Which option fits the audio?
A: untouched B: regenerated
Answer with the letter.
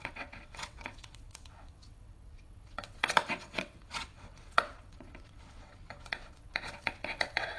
B